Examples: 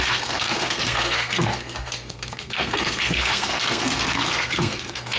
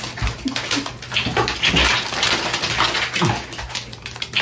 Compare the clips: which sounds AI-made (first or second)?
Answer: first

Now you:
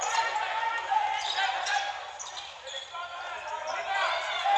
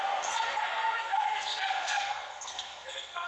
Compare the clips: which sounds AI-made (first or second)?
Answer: second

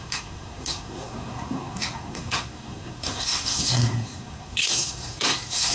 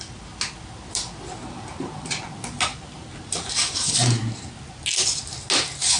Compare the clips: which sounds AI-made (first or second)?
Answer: first